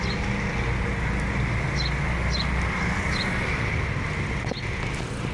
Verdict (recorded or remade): recorded